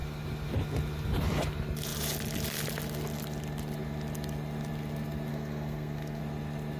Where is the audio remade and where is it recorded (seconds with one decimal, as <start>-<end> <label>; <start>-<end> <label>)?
0.0-5.3 recorded; 5.3-6.2 remade; 6.2-6.8 recorded